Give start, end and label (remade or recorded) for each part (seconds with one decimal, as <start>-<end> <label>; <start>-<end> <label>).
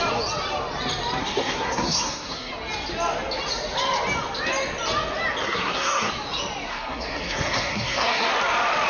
0.0-1.2 recorded; 1.2-2.5 remade; 2.5-5.4 recorded; 5.4-6.1 remade; 6.1-6.7 recorded; 6.7-8.3 remade; 8.3-8.9 recorded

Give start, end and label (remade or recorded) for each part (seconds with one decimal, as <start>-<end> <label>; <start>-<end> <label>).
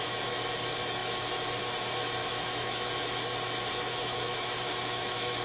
0.0-2.2 recorded; 2.2-2.9 remade; 2.9-3.9 recorded; 3.9-5.4 remade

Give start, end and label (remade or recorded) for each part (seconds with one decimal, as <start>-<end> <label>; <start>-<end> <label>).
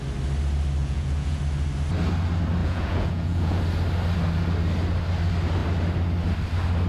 0.0-0.8 recorded; 0.8-1.4 remade; 1.4-2.6 recorded; 2.6-3.6 remade; 3.6-6.9 recorded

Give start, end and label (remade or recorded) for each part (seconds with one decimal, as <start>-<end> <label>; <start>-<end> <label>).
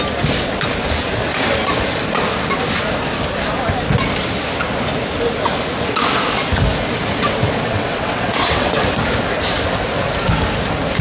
0.0-7.2 recorded; 7.2-8.8 remade; 8.8-11.0 recorded